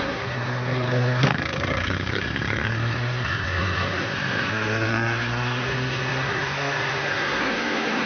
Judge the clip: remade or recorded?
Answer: remade